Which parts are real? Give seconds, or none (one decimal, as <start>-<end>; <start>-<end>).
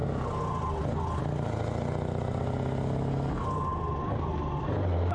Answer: 0.0-5.1